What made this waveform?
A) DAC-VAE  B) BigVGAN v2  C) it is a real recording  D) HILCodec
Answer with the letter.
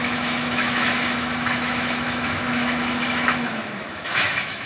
A